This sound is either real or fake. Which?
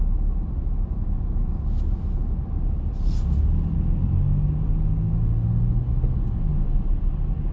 real